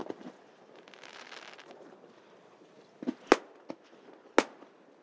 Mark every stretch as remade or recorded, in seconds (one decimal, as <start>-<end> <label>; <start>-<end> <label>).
0.0-3.0 remade; 3.0-5.0 recorded